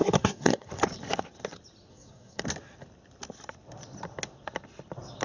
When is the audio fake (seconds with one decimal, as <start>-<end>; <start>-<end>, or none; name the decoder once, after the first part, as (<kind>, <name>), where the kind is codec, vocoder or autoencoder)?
0.0-0.7 (codec, SNAC); 1.9-2.4